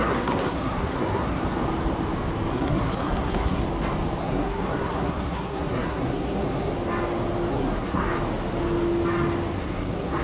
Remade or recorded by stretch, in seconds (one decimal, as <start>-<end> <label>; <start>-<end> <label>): 0.0-1.4 remade; 1.4-2.5 recorded; 2.5-3.6 remade; 3.6-4.2 recorded; 4.2-6.7 remade; 6.7-7.5 recorded; 7.5-8.1 remade; 8.1-9.6 recorded; 9.6-10.2 remade